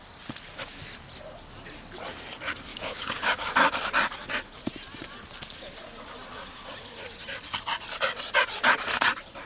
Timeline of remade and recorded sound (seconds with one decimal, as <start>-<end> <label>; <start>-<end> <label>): 0.0-2.7 recorded; 2.7-3.5 remade; 3.5-9.5 recorded